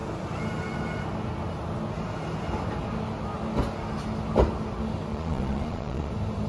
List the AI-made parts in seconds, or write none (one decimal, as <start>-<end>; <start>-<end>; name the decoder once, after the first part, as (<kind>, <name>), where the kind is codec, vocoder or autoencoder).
5.1-6.1 (vocoder, Vocos)